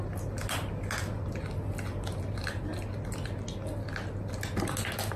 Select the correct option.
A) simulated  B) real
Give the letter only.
B